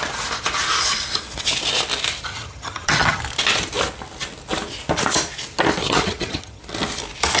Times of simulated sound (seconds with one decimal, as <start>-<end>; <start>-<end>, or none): 2.3-3.2; 5.8-6.6

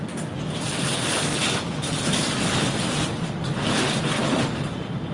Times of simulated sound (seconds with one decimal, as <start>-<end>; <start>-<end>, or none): none